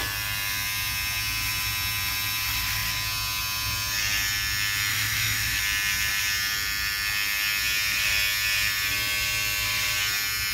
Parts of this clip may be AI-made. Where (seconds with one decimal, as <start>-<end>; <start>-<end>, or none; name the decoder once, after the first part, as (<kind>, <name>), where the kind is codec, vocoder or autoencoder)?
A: 4.9-5.6 (autoencoder, DAC-VAE)